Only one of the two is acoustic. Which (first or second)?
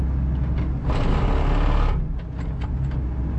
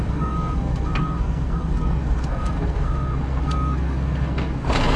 first